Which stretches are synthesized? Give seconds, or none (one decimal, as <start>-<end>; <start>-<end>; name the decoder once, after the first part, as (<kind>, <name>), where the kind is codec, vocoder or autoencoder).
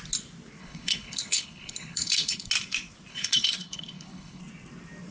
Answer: 0.6-2.5 (codec, HILCodec); 3.1-4.4